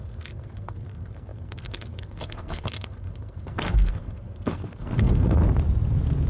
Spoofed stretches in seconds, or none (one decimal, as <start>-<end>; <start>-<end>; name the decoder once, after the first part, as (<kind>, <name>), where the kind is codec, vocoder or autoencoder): 0.0-5.4 (codec, SNAC)